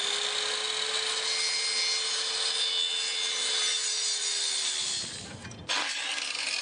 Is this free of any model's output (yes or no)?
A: yes